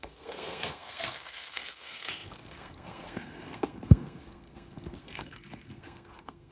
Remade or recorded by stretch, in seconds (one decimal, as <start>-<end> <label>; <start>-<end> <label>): 0.0-6.5 remade